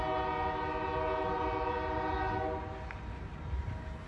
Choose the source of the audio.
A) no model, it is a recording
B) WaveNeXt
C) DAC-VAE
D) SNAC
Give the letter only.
A